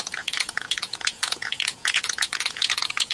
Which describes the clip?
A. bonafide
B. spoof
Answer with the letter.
B